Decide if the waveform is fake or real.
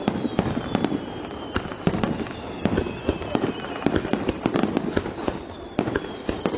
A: real